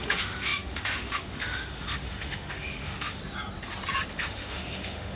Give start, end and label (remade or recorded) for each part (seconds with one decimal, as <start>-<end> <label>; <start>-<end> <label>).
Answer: 0.0-3.2 remade; 3.2-4.1 recorded; 4.1-5.2 remade